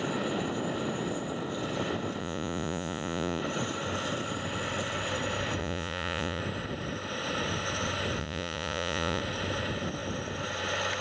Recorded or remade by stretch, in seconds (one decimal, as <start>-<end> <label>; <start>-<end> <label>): 0.0-2.2 recorded; 2.2-3.4 remade; 3.4-5.6 recorded; 5.6-6.4 remade; 6.4-8.2 recorded; 8.2-9.2 remade; 9.2-11.0 recorded